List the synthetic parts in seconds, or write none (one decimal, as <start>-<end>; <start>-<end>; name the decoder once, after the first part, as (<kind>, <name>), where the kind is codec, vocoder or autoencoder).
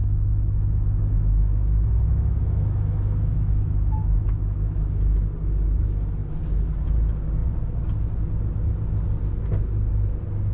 0.0-4.9 (autoencoder, DAC-VAE)